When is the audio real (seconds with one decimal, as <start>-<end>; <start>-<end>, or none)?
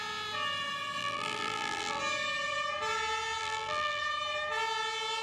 0.0-1.0; 2.0-3.4; 4.0-5.2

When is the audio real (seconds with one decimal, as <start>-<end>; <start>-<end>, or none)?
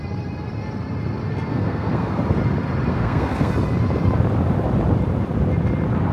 0.0-1.5; 2.2-2.9; 3.5-6.1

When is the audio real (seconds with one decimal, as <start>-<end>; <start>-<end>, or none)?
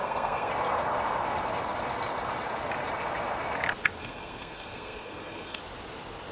0.5-4.0; 5.6-6.3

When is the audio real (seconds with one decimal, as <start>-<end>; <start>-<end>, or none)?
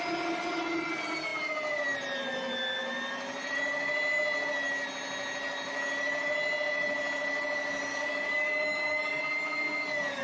0.0-7.9; 9.2-10.2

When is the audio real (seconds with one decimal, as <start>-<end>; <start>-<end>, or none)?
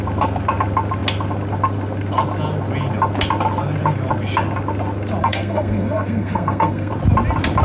0.0-5.2; 6.9-7.6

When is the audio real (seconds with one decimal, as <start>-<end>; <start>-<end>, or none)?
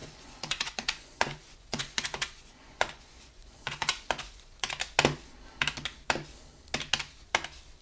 4.7-7.8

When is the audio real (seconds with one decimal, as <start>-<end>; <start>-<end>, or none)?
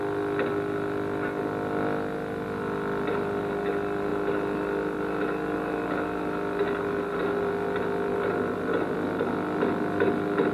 0.0-10.5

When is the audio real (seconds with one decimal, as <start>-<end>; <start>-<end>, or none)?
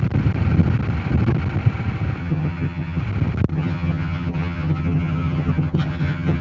0.0-2.2; 3.0-3.5